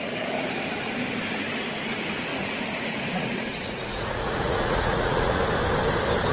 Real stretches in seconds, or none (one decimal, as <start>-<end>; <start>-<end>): 0.0-2.3; 5.4-6.3